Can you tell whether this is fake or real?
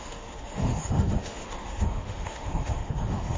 fake